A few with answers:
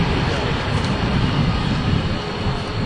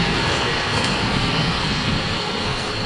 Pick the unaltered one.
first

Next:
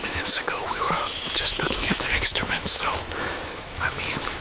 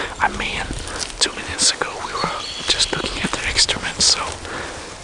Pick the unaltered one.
second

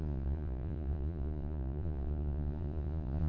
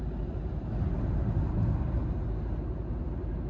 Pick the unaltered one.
second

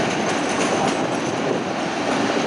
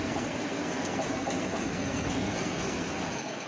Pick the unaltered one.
first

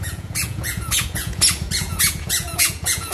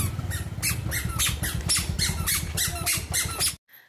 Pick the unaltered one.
second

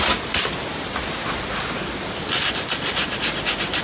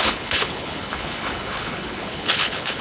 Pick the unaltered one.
first